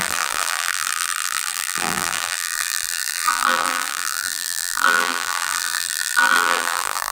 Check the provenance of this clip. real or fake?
fake